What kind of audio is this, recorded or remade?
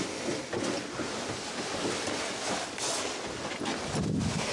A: recorded